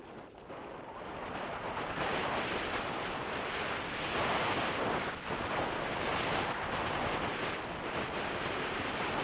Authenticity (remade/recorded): recorded